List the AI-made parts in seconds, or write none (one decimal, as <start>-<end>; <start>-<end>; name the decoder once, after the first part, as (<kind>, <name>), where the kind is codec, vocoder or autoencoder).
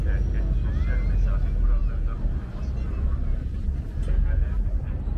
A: none